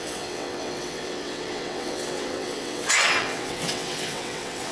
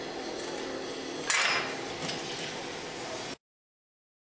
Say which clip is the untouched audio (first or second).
second